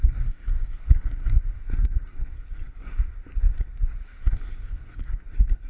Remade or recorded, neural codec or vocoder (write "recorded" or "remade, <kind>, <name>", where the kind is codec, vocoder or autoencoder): remade, codec, SNAC